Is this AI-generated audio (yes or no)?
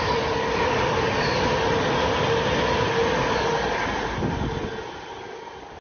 no